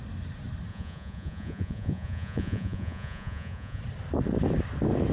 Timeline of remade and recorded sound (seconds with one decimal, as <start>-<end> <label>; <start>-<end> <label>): 0.0-0.7 recorded; 0.7-3.8 remade; 3.8-5.1 recorded